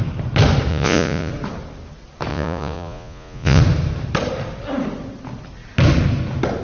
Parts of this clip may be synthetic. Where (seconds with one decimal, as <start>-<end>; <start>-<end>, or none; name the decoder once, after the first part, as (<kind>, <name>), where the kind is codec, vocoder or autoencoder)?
0.7-1.3 (vocoder, Vocos); 2.3-3.6

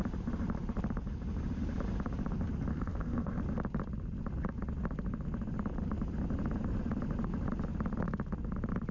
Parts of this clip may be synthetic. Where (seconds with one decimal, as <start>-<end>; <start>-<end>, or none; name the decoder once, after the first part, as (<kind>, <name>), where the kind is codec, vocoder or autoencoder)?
2.7-3.4 (codec, SNAC)